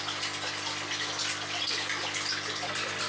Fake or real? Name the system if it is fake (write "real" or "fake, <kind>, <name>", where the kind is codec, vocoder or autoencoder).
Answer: fake, vocoder, BigVGAN v2